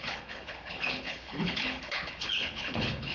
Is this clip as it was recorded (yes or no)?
no